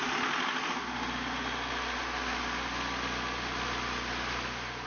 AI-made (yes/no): no